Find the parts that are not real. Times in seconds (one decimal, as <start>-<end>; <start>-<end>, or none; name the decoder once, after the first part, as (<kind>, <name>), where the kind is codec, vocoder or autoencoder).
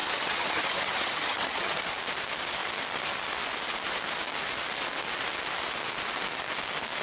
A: 0.0-1.8 (vocoder, HiFi-GAN)